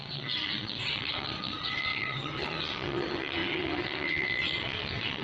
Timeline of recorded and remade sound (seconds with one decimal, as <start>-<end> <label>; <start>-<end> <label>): 0.0-5.2 remade